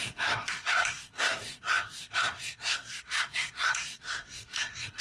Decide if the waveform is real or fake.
fake